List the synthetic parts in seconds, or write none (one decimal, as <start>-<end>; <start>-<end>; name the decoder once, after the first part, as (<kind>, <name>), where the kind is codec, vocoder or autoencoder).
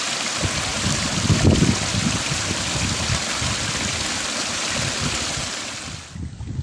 0.7-4.7 (vocoder, BigVGAN v2)